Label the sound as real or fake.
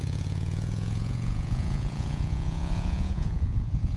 fake